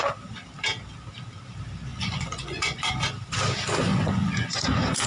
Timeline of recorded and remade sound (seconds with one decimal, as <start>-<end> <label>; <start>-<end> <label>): 0.0-1.9 recorded; 1.9-2.9 remade; 2.9-3.9 recorded; 3.9-5.1 remade

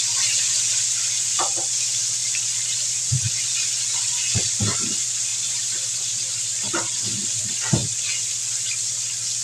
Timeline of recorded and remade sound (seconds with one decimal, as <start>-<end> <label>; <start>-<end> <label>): 0.0-5.3 recorded; 5.3-6.0 remade; 6.0-7.8 recorded; 7.8-8.3 remade; 8.3-9.4 recorded

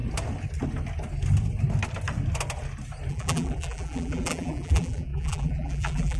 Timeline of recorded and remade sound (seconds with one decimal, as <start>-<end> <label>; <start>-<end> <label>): 0.0-3.1 recorded; 3.1-6.2 remade

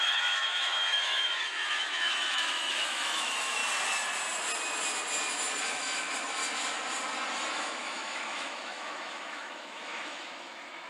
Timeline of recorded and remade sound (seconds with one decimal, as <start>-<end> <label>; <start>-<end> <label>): 0.0-3.6 remade; 3.6-5.6 recorded; 5.6-6.4 remade; 6.4-7.5 recorded; 7.5-10.9 remade

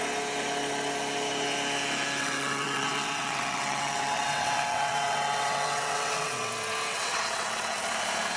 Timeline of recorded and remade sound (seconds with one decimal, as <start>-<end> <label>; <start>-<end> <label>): 0.0-2.2 recorded; 2.2-6.5 remade; 6.5-6.9 recorded; 6.9-7.8 remade; 7.8-8.4 recorded